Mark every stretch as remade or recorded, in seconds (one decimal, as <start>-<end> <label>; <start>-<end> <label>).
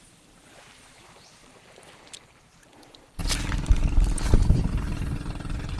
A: 0.0-5.8 recorded